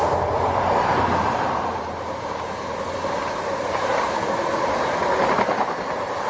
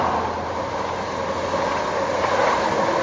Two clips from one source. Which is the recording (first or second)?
second